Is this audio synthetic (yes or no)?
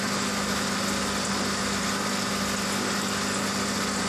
no